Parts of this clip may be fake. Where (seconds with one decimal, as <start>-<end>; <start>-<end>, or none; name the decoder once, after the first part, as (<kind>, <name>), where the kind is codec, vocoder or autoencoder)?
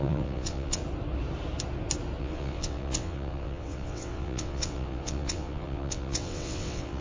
0.0-0.8 (vocoder, WaveNeXt); 2.2-7.0